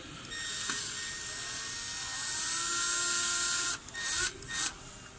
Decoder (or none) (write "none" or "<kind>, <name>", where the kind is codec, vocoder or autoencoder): none